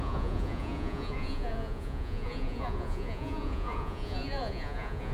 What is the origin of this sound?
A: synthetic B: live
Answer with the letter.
A